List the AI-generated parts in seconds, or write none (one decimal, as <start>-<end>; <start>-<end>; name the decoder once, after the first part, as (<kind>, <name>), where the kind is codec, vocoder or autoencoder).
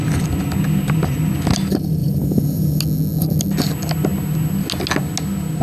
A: 2.0-2.8 (vocoder, Vocos)